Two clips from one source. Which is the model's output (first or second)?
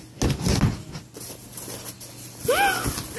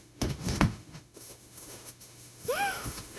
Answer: second